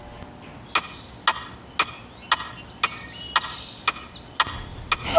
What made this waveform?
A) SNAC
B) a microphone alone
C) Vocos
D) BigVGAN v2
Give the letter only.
B